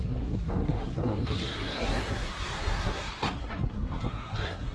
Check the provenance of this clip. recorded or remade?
remade